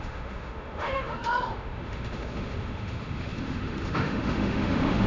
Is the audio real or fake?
fake